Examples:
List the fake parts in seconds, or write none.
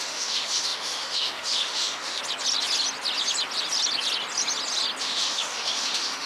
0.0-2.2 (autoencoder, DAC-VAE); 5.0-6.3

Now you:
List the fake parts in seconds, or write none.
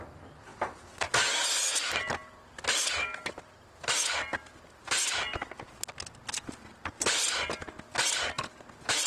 none